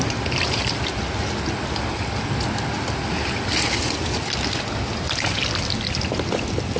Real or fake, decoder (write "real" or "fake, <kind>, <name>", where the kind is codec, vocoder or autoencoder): real